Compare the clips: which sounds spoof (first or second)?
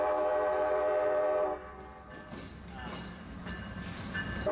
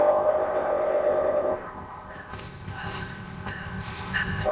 second